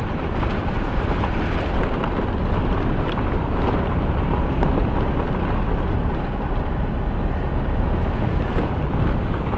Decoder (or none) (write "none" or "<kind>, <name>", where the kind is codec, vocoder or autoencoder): none